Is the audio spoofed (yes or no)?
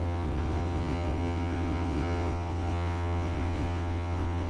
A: yes